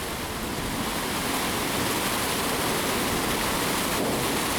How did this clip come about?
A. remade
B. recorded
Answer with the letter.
B